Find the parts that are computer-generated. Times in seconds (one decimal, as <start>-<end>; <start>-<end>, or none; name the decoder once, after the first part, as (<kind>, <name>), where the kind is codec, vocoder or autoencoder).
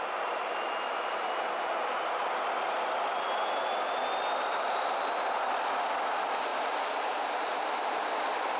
4.5-5.4 (vocoder, BigVGAN v2); 6.5-8.1